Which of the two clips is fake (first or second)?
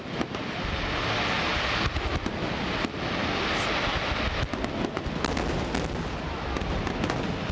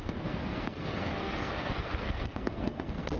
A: second